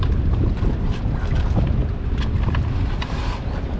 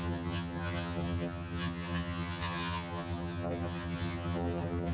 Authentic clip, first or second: first